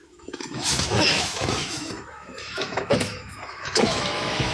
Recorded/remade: remade